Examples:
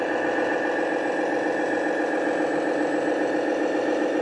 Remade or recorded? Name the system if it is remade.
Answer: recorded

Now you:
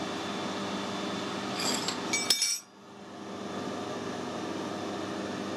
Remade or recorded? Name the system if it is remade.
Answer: recorded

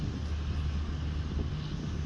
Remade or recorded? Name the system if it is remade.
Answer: recorded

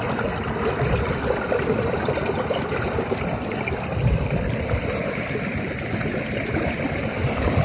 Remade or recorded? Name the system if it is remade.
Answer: recorded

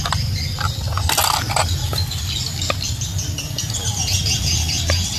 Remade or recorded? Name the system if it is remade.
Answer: recorded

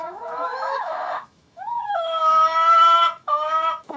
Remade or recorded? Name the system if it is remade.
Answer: remade, autoencoder, DAC-VAE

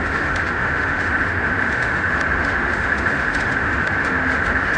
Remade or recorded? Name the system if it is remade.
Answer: remade, autoencoder, DAC-VAE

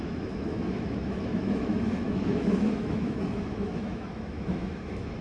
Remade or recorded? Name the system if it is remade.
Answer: remade, autoencoder, DAC-VAE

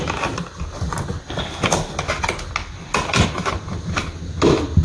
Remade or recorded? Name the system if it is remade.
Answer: recorded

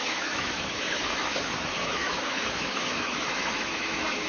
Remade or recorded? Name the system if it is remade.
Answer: remade, autoencoder, DAC-VAE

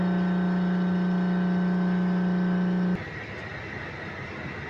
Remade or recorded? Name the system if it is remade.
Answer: recorded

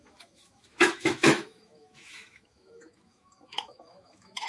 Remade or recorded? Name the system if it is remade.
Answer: remade, autoencoder, DAC-VAE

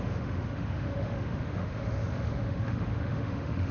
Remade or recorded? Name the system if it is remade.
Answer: remade, autoencoder, DAC-VAE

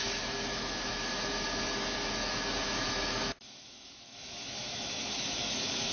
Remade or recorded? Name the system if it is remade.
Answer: remade, autoencoder, DAC-VAE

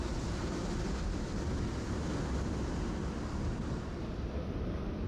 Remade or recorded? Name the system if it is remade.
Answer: recorded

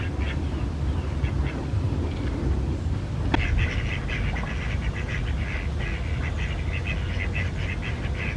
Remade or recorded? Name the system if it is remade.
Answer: recorded